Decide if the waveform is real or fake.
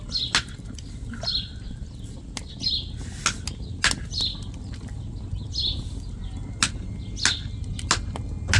real